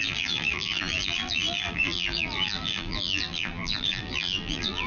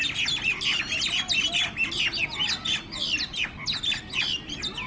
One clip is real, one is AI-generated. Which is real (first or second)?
second